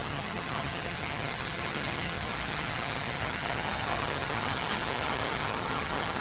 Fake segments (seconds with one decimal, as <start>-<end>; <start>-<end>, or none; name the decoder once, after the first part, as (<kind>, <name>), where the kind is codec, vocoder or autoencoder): 0.0-6.2 (vocoder, HiFi-GAN)

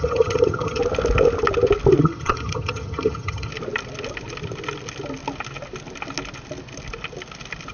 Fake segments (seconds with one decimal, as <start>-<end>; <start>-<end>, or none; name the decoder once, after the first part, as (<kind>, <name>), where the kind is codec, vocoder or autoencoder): 0.0-0.8 (vocoder, HiFi-GAN); 2.0-3.5

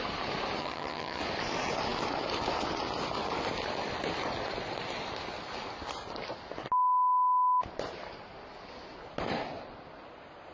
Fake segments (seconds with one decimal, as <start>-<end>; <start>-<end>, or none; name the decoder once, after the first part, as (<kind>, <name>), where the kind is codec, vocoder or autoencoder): 0.6-1.2 (vocoder, HiFi-GAN)

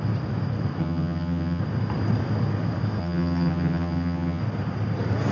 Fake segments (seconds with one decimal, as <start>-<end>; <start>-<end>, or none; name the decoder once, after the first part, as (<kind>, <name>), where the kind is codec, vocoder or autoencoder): 0.8-1.6 (vocoder, HiFi-GAN); 3.0-4.4

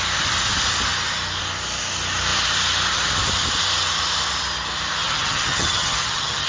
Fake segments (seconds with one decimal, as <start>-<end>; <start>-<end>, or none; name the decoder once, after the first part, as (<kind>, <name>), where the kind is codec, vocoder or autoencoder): 5.0-6.5 (vocoder, HiFi-GAN)

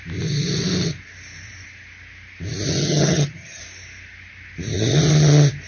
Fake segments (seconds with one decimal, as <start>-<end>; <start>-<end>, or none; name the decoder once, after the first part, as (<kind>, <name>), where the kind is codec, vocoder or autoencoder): 2.8-3.6 (vocoder, HiFi-GAN)

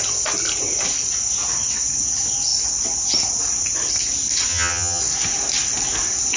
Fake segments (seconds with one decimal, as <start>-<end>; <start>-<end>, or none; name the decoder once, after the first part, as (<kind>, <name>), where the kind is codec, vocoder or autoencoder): 4.5-5.0 (vocoder, HiFi-GAN)

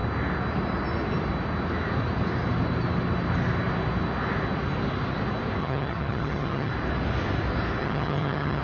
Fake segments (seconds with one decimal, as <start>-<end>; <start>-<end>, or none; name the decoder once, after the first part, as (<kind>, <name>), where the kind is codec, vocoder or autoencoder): 5.6-6.7 (vocoder, HiFi-GAN); 7.8-8.6